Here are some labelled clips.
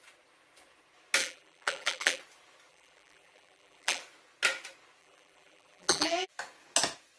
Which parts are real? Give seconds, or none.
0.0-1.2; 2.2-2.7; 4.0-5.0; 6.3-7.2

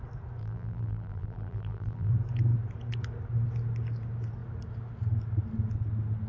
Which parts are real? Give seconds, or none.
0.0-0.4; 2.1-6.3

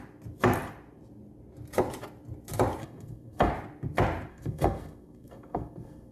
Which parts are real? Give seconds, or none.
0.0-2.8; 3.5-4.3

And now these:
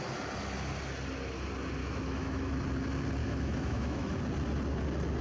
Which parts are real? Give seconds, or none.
0.0-1.8; 2.5-3.2; 4.2-5.2

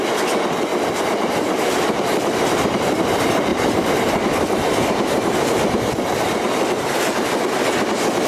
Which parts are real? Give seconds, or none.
0.0-0.7; 3.0-3.5; 5.9-8.3

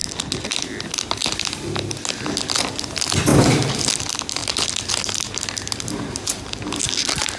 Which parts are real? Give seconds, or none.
0.0-7.4